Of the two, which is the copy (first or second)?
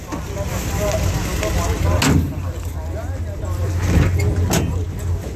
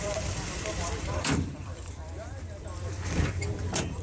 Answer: second